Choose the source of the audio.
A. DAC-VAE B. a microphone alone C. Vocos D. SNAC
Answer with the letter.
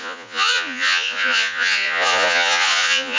C